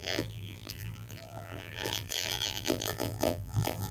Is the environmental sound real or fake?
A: fake